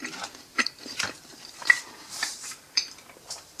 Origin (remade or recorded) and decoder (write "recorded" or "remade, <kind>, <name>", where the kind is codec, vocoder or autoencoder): remade, vocoder, BigVGAN v2